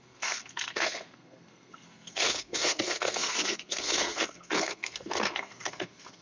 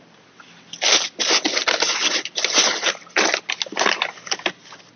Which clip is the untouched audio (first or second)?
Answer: second